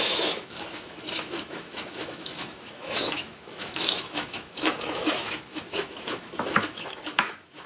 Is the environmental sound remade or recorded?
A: remade